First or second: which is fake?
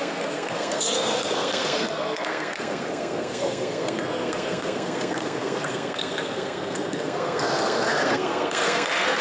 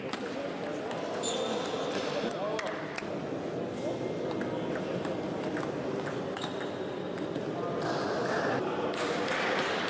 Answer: first